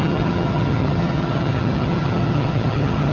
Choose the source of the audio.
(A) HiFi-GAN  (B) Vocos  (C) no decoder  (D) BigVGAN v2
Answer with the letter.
A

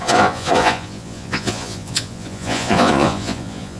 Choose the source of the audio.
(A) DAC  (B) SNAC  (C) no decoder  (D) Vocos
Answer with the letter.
D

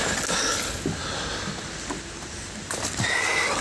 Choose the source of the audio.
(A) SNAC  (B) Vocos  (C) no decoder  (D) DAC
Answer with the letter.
C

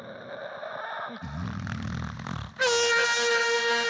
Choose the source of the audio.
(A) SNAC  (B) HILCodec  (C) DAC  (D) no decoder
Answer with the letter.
D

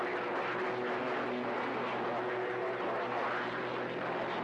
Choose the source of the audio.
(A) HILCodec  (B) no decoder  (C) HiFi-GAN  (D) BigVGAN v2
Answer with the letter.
B